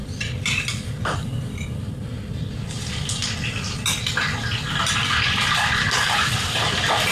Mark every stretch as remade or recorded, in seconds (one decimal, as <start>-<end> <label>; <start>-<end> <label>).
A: 0.0-3.2 remade; 3.2-6.5 recorded; 6.5-7.1 remade